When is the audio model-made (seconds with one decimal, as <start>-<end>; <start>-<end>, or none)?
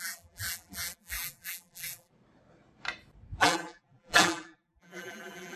0.0-2.1; 3.4-5.6